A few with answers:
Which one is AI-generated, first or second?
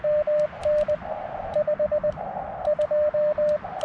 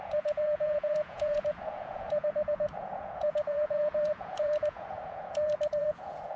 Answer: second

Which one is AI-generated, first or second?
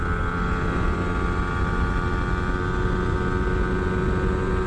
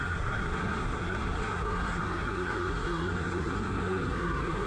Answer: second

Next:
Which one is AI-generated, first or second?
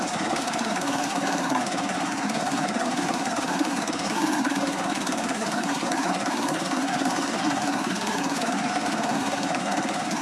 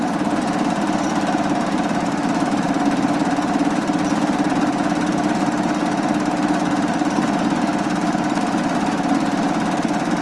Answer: first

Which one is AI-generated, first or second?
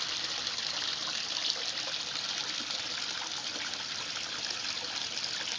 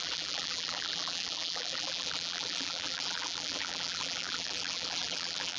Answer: second